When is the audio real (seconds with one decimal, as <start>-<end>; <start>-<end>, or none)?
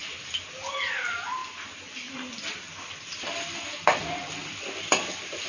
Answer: 0.0-5.5